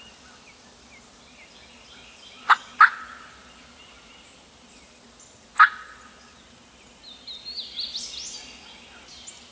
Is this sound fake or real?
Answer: real